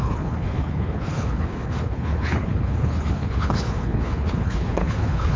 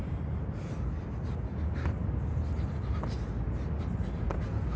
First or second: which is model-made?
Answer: first